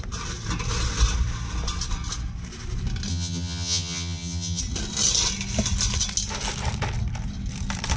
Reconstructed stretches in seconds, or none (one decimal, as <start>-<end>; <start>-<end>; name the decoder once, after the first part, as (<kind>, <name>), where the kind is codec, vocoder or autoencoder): 3.1-4.6 (vocoder, HiFi-GAN)